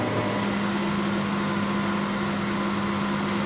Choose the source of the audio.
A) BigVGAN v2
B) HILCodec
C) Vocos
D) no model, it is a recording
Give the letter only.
D